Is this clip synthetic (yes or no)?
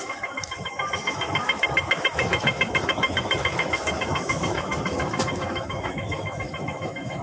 yes